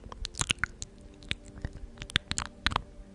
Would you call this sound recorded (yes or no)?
yes